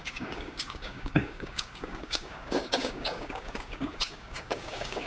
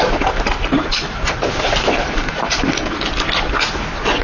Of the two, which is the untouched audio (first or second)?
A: second